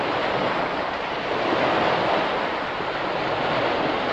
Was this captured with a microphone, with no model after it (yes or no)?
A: yes